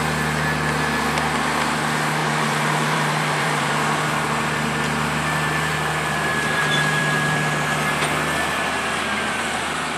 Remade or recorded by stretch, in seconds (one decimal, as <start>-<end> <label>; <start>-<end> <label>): 0.0-2.2 recorded; 2.2-3.7 remade; 3.7-6.3 recorded; 6.3-7.0 remade; 7.0-10.0 recorded